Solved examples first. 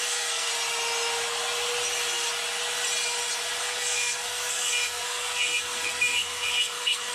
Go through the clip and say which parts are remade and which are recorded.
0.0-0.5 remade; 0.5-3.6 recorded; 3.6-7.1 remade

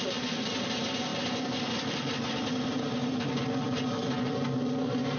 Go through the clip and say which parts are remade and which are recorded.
0.0-5.2 recorded

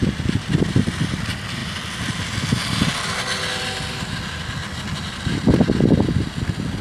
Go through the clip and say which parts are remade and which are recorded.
0.0-6.8 recorded

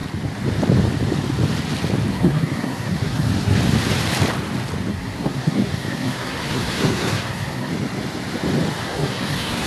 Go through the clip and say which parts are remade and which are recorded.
0.0-2.1 recorded; 2.1-3.6 remade; 3.6-4.9 recorded; 4.9-7.7 remade; 7.7-8.8 recorded; 8.8-9.7 remade

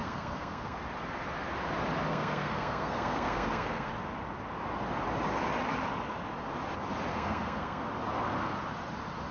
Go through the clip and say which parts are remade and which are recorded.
0.0-0.8 remade; 0.8-2.1 recorded; 2.1-3.9 remade; 3.9-7.1 recorded; 7.1-7.9 remade; 7.9-9.3 recorded

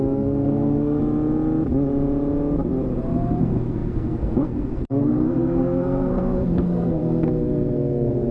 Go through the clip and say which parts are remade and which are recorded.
0.0-1.0 remade; 1.0-3.4 recorded; 3.4-8.3 remade

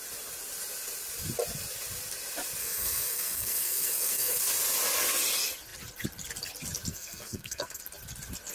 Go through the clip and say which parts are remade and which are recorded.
0.0-2.6 recorded; 2.6-4.4 remade; 4.4-6.9 recorded; 6.9-7.8 remade; 7.8-8.5 recorded